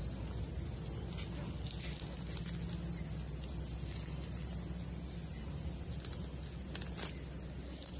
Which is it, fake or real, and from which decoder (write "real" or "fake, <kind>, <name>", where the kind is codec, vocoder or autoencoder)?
real